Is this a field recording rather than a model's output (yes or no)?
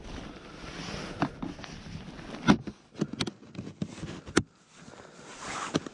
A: yes